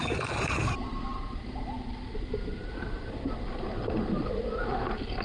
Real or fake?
real